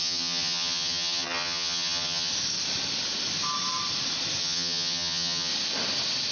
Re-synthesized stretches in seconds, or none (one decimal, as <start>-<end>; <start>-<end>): 0.0-2.3; 4.4-5.5

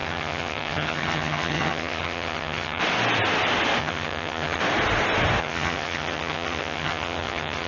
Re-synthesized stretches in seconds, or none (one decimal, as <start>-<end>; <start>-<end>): 0.0-2.8; 3.8-4.6; 5.4-7.7

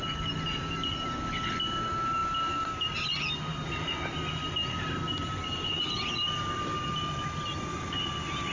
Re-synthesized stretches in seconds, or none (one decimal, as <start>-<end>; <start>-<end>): none

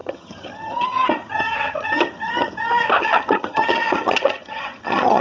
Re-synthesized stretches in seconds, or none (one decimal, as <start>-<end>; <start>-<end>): 0.0-2.5; 3.0-5.2

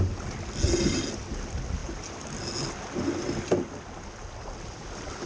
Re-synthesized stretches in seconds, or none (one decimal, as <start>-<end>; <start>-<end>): none